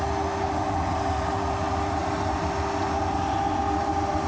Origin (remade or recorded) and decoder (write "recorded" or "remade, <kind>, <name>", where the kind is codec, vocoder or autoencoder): recorded